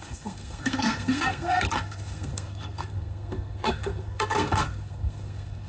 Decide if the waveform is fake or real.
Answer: fake